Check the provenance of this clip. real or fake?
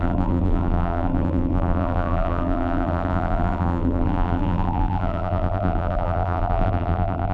fake